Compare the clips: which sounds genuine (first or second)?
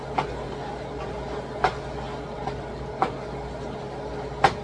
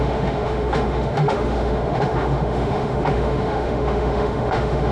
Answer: first